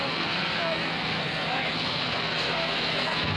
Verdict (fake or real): fake